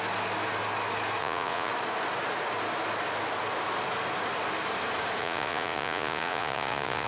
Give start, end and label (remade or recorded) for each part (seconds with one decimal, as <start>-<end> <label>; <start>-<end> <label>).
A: 0.0-1.2 recorded; 1.2-1.7 remade; 1.7-5.2 recorded; 5.2-7.1 remade

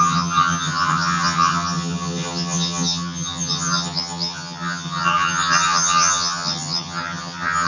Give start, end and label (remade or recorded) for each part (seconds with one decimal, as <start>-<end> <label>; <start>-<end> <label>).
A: 0.0-7.7 remade

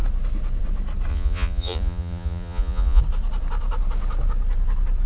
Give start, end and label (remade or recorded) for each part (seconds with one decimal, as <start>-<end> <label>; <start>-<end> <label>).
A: 0.0-1.1 recorded; 1.1-3.0 remade; 3.0-5.1 recorded

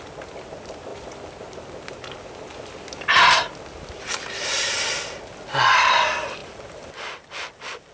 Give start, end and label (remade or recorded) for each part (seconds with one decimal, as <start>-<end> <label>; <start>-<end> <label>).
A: 0.0-6.4 recorded; 6.4-7.9 remade

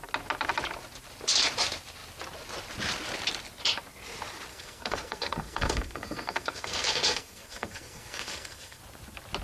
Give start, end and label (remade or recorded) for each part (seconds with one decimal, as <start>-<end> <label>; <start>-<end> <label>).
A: 0.0-4.5 recorded; 4.5-8.8 remade; 8.8-9.4 recorded

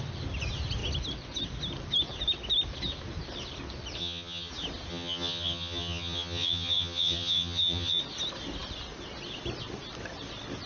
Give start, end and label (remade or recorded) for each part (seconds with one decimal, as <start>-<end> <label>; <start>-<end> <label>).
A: 0.0-4.0 recorded; 4.0-4.5 remade; 4.5-4.9 recorded; 4.9-8.0 remade; 8.0-10.7 recorded

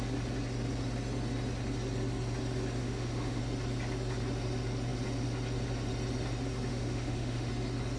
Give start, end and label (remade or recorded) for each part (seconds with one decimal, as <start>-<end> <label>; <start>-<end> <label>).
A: 0.0-2.8 recorded; 2.8-3.4 remade; 3.4-6.7 recorded; 6.7-7.5 remade; 7.5-8.0 recorded